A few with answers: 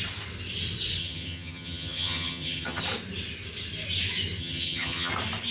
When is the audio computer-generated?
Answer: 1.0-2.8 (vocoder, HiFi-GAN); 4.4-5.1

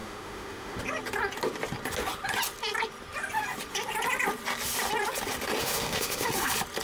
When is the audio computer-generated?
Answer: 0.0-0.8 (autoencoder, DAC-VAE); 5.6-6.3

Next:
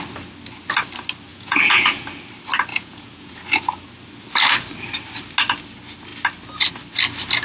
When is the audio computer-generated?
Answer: 1.3-2.0 (vocoder, Vocos); 2.7-3.3

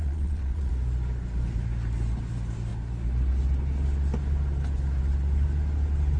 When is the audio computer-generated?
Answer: 0.0-0.7 (vocoder, Vocos)

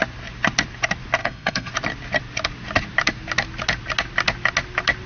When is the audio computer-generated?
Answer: 1.2-1.7 (codec, SNAC)

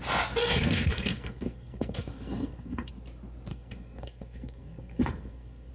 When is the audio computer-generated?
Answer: 0.4-2.9 (codec, SNAC); 3.5-5.7